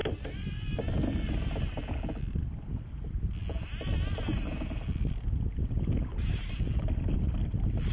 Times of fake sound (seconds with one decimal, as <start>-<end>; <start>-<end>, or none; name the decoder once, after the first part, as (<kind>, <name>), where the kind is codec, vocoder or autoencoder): none